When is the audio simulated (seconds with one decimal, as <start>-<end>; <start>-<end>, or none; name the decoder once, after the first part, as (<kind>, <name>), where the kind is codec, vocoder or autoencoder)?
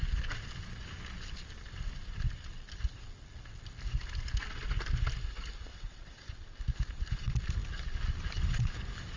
5.7-6.3 (vocoder, WaveNeXt)